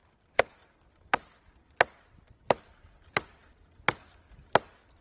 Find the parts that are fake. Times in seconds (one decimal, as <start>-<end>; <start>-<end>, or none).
none